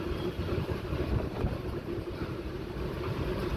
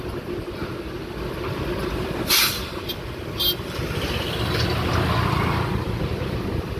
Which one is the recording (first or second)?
second